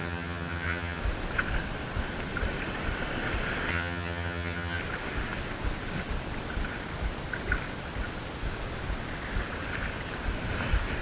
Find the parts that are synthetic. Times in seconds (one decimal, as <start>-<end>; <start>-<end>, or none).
0.0-1.0; 3.7-4.8